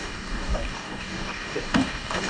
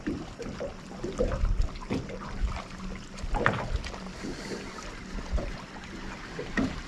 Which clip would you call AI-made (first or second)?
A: first